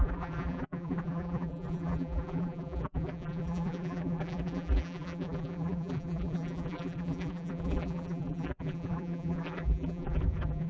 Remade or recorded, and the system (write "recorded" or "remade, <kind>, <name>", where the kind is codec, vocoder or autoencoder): remade, vocoder, BigVGAN v2